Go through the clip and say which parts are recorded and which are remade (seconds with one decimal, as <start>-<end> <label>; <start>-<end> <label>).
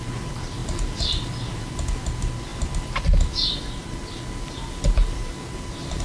0.0-6.0 recorded